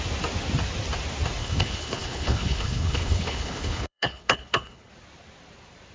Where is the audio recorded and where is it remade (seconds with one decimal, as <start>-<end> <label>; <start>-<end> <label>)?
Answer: 0.0-1.4 recorded; 1.4-4.9 remade; 4.9-5.9 recorded